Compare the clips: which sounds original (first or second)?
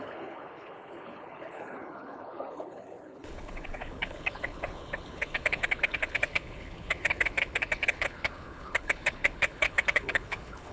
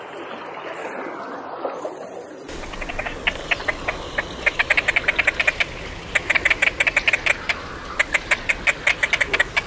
second